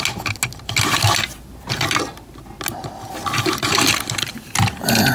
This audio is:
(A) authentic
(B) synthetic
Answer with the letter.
A